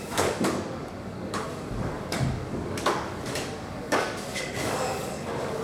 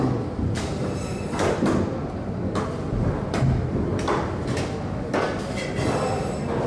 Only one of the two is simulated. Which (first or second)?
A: first